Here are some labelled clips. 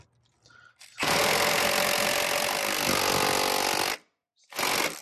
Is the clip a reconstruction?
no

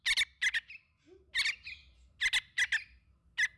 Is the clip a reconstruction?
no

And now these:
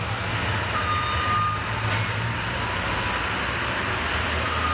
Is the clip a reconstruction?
no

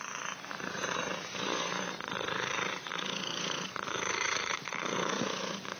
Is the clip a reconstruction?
yes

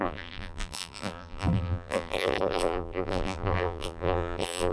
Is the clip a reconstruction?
yes